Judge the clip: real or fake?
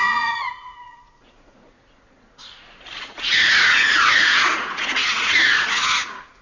fake